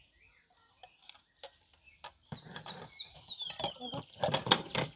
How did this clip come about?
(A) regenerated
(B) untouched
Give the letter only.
B